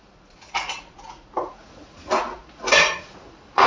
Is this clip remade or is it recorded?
remade